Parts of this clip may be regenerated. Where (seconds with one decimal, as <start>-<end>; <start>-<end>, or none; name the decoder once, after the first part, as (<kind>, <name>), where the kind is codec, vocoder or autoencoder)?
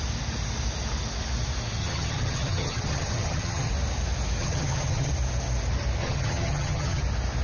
1.8-3.7 (vocoder, HiFi-GAN); 4.4-5.1; 6.0-7.0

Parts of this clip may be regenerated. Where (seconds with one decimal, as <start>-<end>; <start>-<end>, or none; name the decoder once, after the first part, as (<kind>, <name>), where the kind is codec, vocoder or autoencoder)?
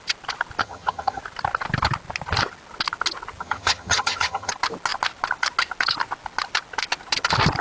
0.6-1.2 (vocoder, HiFi-GAN); 3.4-4.5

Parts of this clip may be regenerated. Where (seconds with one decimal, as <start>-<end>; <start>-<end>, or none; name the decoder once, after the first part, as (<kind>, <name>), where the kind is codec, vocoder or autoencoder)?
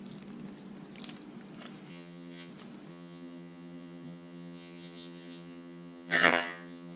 1.9-2.5 (vocoder, HiFi-GAN); 2.9-7.0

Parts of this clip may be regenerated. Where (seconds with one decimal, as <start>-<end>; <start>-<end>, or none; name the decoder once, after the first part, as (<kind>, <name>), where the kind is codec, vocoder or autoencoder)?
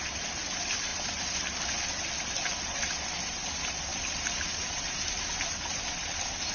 none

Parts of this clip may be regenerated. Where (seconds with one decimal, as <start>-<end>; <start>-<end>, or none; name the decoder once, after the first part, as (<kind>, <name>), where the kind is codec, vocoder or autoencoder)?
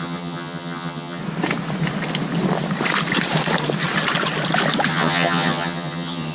0.0-1.2 (vocoder, HiFi-GAN); 4.9-6.3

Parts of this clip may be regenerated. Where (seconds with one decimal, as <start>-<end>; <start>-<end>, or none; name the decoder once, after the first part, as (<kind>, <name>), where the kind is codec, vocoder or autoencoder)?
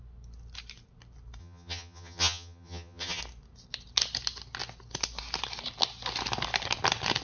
1.4-3.2 (vocoder, HiFi-GAN)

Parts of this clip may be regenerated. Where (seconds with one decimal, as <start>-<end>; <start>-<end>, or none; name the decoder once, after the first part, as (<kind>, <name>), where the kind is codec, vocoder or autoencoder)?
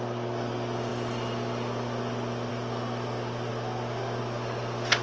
none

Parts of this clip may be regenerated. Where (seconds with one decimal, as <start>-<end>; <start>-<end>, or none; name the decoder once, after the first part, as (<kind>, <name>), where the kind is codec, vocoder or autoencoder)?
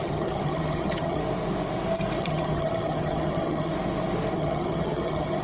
0.0-1.2 (vocoder, HiFi-GAN); 2.2-3.7; 4.3-5.4